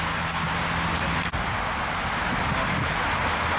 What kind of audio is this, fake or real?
real